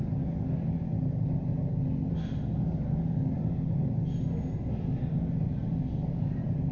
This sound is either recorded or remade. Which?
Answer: recorded